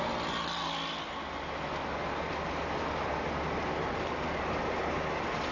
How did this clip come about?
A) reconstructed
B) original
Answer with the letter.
B